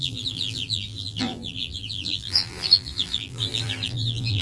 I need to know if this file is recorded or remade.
remade